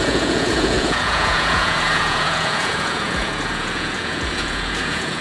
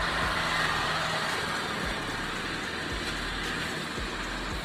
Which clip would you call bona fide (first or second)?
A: second